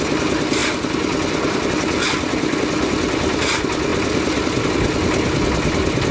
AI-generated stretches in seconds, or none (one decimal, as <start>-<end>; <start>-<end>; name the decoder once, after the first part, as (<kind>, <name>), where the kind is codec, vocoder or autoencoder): none